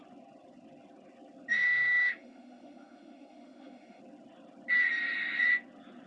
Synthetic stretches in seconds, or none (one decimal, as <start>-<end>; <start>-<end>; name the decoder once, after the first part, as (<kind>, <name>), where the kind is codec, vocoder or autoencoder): 1.5-4.0 (autoencoder, DAC-VAE)